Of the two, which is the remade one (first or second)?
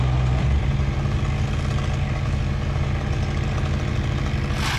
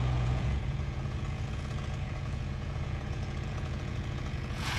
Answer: second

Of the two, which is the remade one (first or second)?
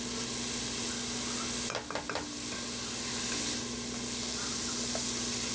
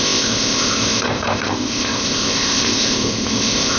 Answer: second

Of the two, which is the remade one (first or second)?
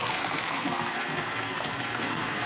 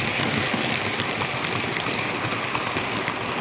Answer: first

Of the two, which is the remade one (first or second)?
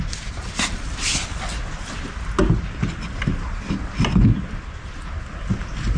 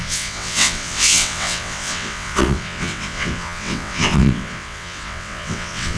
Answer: second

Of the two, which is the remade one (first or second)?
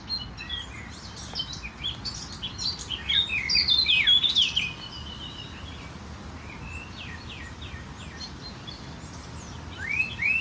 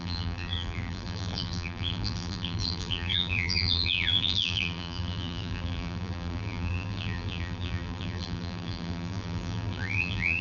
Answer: second